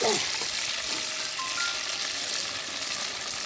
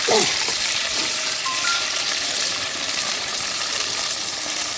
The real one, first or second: first